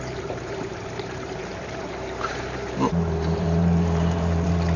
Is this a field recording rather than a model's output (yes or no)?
no